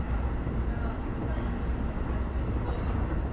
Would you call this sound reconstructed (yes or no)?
no